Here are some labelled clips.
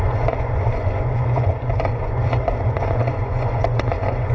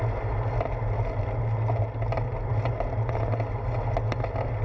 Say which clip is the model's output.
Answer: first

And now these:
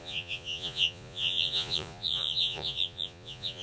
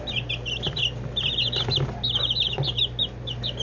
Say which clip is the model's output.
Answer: first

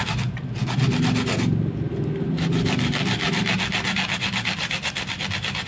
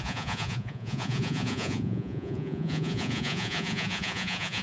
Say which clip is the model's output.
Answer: second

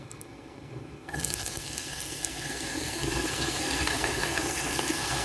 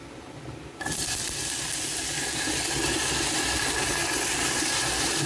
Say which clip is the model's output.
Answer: first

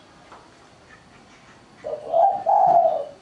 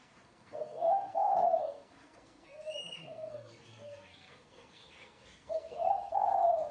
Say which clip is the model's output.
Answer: second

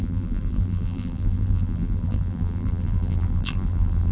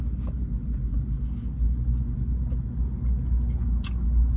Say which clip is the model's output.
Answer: first